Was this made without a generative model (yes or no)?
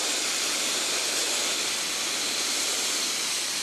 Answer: no